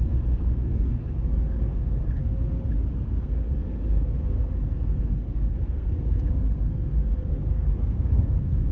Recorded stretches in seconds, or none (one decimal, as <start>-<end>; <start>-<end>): 2.2-2.9